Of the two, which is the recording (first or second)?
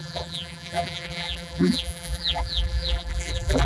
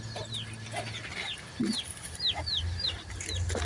second